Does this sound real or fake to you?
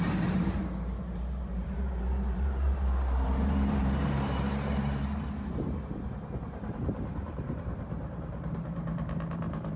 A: fake